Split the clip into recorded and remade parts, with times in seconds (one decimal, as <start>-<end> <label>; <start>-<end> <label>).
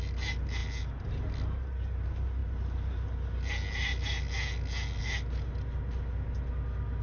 0.0-7.0 recorded